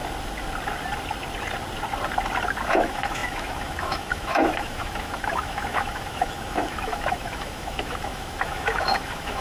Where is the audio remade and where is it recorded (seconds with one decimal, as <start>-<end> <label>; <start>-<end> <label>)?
0.0-2.7 recorded; 2.7-9.4 remade